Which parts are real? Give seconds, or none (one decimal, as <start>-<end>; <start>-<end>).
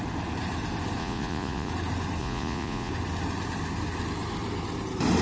0.0-1.0; 1.7-2.2; 2.9-5.2